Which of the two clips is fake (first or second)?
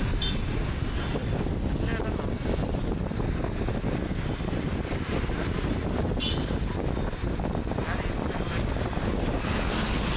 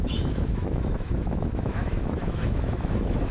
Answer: second